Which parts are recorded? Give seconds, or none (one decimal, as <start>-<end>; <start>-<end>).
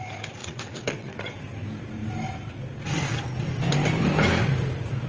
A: 0.0-0.4; 1.4-5.1